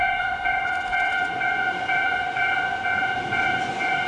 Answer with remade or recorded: remade